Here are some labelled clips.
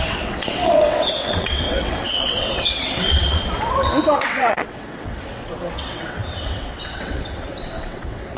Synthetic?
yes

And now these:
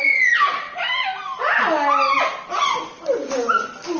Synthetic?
no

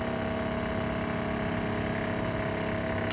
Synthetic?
no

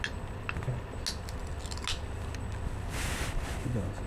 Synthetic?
no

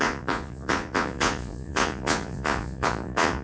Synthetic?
yes